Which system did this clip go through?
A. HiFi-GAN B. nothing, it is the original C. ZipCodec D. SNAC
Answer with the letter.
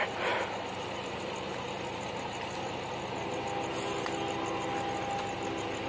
B